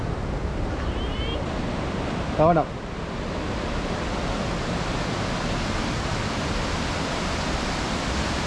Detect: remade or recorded recorded